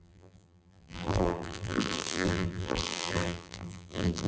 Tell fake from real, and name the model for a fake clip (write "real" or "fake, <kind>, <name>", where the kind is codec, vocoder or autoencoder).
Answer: fake, vocoder, BigVGAN v2